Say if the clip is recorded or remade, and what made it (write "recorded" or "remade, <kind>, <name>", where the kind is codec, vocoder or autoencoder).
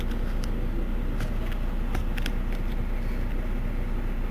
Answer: recorded